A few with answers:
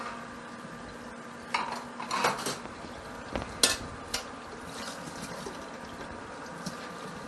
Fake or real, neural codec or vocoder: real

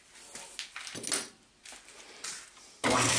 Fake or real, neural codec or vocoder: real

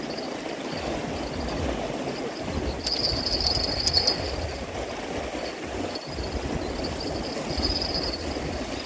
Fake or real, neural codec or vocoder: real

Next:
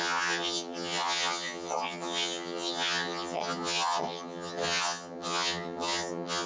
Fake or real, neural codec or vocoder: fake, vocoder, HiFi-GAN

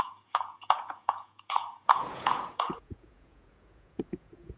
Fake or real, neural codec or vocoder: fake, vocoder, Vocos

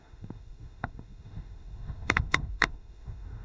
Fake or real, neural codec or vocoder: fake, autoencoder, DAC-VAE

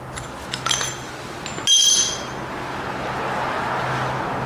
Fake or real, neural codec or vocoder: real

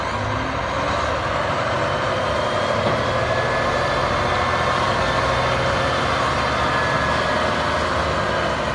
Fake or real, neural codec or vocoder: real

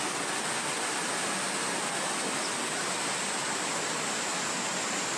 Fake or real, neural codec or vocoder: real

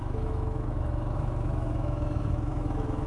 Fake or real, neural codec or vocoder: fake, autoencoder, DAC-VAE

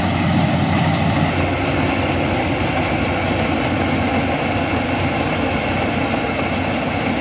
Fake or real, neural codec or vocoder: real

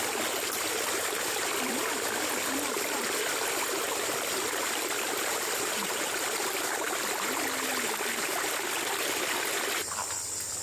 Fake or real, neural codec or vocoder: real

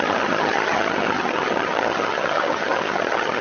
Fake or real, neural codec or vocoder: fake, vocoder, HiFi-GAN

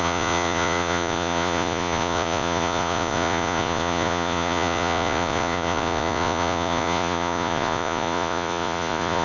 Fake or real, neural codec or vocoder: fake, vocoder, Vocos